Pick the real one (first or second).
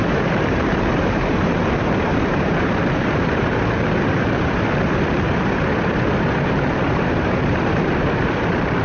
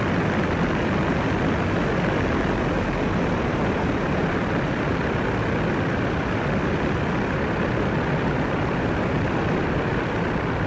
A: second